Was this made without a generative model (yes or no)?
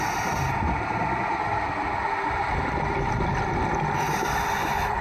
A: yes